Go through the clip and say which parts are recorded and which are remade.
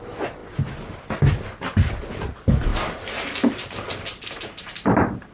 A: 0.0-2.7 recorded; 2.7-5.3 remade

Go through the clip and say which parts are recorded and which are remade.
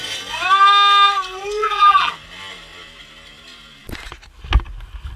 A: 0.0-1.6 recorded; 1.6-2.1 remade; 2.1-5.2 recorded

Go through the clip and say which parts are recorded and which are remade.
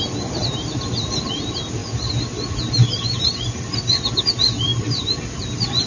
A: 0.0-0.4 recorded; 0.4-1.1 remade; 1.1-5.9 recorded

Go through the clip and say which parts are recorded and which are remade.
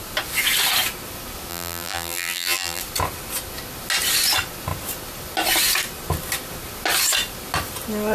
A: 0.0-1.5 recorded; 1.5-2.8 remade; 2.8-8.1 recorded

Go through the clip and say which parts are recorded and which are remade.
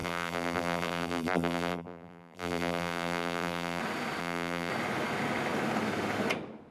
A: 0.0-3.8 remade; 3.8-4.2 recorded; 4.2-4.7 remade; 4.7-6.7 recorded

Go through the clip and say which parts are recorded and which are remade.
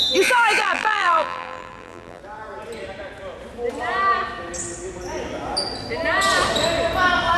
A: 0.0-0.6 recorded; 0.6-2.2 remade; 2.2-7.4 recorded